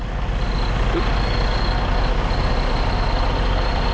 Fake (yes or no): no